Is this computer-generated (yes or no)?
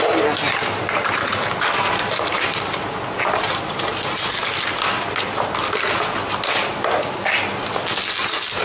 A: no